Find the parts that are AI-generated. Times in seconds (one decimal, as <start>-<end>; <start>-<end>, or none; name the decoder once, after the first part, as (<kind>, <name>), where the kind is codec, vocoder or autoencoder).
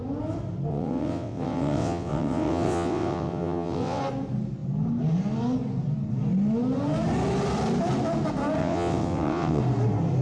0.7-4.0 (vocoder, WaveNeXt); 8.6-9.6